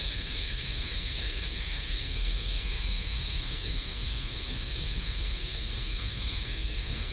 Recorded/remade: remade